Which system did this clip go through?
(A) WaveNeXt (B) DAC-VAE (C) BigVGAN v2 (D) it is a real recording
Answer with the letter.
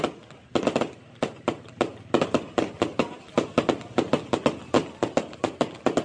D